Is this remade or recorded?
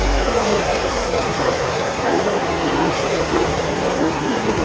remade